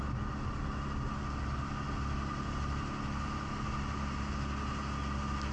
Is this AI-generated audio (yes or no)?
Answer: no